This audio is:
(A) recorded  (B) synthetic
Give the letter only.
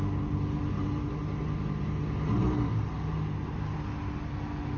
A